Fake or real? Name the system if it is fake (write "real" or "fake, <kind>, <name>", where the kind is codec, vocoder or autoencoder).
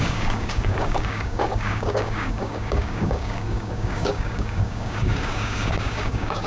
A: fake, codec, DAC